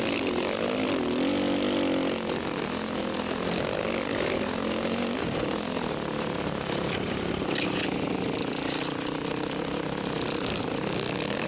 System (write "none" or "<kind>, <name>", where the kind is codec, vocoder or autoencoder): none